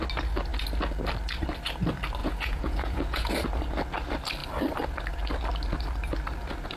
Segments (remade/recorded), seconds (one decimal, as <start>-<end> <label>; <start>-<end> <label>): 0.0-2.2 recorded; 2.2-3.3 remade; 3.3-6.8 recorded